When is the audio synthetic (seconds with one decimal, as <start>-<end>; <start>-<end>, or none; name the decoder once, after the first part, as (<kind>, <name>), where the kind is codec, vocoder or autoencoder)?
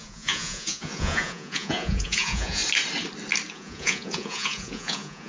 0.0-2.6 (vocoder, Vocos); 3.5-5.3